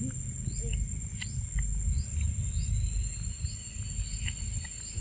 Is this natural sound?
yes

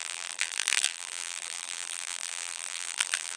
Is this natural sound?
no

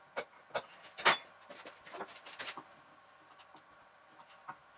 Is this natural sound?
yes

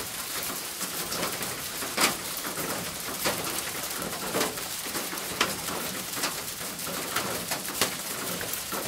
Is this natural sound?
no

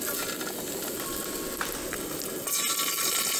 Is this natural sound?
yes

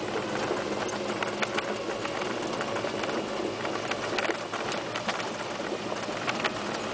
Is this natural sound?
yes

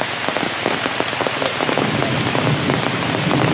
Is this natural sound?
yes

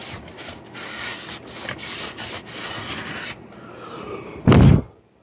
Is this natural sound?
yes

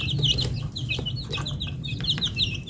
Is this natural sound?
yes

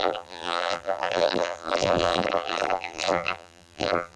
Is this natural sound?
no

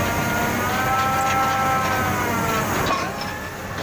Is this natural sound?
yes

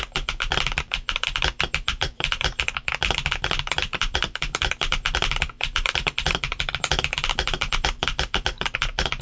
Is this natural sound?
no